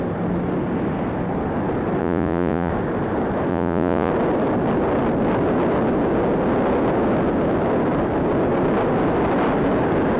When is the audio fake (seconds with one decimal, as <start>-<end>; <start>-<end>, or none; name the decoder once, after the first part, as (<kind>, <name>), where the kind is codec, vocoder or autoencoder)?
2.0-2.7 (vocoder, Vocos); 3.5-4.1